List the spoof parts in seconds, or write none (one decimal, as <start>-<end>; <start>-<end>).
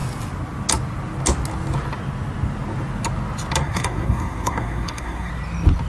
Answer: 3.6-5.3